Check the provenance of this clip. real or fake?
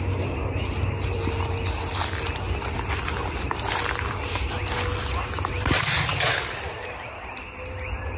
real